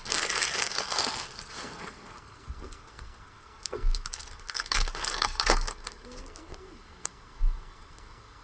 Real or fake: fake